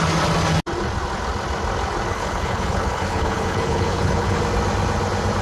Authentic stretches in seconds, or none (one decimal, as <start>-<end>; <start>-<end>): 0.0-2.1; 4.4-5.4